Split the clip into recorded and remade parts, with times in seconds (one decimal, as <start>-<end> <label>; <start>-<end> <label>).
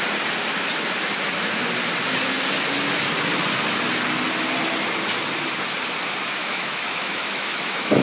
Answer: 0.0-6.4 recorded; 6.4-8.0 remade